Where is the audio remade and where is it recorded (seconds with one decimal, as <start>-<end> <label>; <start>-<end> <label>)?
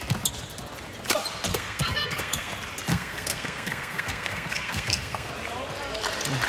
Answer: 0.0-1.5 recorded; 1.5-2.5 remade; 2.5-2.9 recorded; 2.9-5.3 remade; 5.3-6.5 recorded